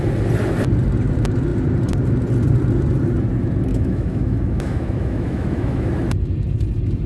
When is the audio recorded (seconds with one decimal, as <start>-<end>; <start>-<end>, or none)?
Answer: 0.0-3.7; 5.9-7.1